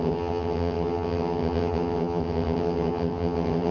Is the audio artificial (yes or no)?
yes